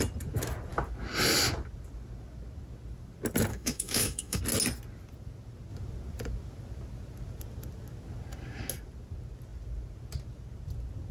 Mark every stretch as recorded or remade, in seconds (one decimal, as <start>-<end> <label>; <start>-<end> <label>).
0.0-3.5 recorded; 3.5-4.4 remade; 4.4-11.1 recorded